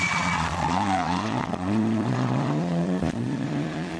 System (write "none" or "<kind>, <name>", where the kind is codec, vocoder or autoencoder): vocoder, Vocos